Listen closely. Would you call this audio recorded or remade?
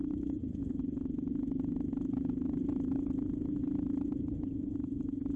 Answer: recorded